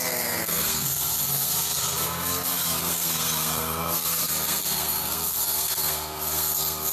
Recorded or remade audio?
remade